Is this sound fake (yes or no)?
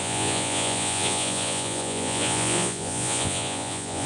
yes